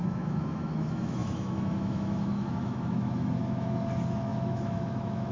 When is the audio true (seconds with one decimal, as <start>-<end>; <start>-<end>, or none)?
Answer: none